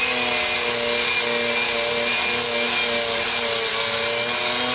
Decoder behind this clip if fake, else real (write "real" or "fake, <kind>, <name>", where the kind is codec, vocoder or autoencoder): real